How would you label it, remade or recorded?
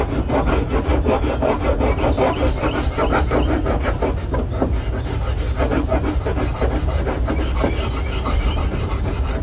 recorded